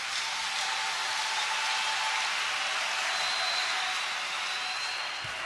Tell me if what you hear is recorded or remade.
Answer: recorded